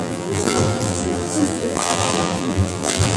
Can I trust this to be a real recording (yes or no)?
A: no